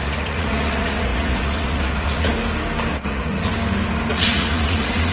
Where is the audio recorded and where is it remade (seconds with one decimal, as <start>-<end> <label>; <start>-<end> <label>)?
0.0-2.3 remade; 2.3-2.9 recorded; 2.9-3.5 remade; 3.5-4.1 recorded; 4.1-5.1 remade